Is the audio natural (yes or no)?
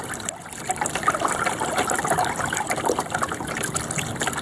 yes